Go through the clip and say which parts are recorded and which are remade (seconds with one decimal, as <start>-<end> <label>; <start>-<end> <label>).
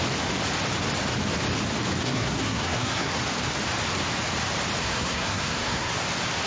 0.0-2.0 recorded; 2.0-3.2 remade; 3.2-4.8 recorded; 4.8-5.9 remade; 5.9-6.5 recorded